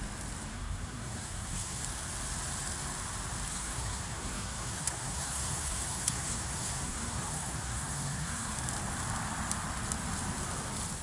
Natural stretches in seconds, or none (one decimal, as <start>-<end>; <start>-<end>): 0.0-0.5; 1.8-3.5; 8.5-11.0